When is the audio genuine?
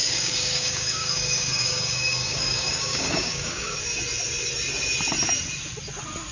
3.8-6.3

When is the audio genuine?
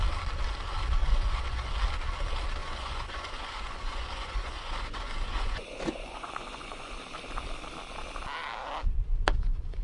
0.0-1.0; 1.7-2.6; 6.9-9.8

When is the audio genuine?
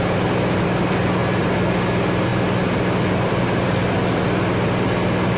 0.0-5.4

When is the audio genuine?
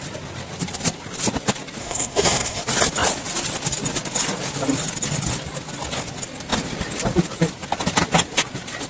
0.0-1.8; 2.6-8.9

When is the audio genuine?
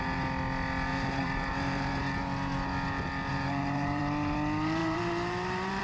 0.0-0.9; 2.0-3.3; 4.0-4.8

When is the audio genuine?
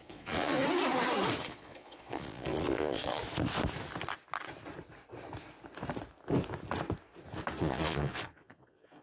0.6-1.4; 3.2-7.6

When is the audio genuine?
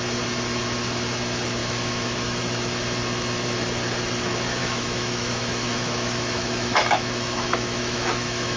0.0-1.6; 2.4-4.6